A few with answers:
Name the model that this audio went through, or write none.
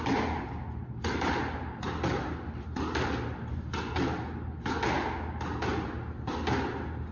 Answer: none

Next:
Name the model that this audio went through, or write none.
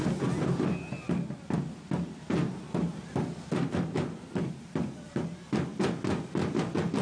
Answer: none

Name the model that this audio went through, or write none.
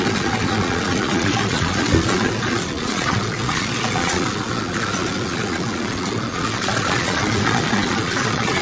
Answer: vocoder, Vocos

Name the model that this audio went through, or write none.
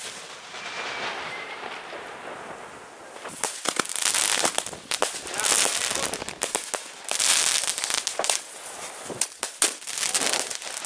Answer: none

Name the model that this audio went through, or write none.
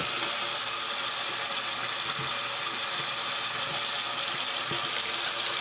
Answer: none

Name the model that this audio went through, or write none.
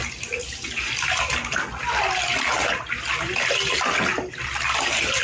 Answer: none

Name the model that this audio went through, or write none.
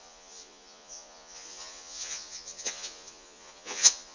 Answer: vocoder, Vocos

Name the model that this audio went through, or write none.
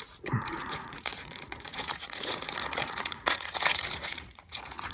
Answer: vocoder, Vocos